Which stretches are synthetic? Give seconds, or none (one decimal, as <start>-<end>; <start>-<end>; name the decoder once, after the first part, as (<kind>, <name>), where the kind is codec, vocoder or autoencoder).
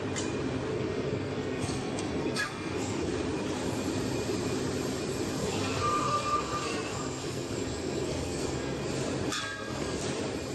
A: 0.7-3.1 (codec, SNAC); 5.4-8.8; 9.3-10.0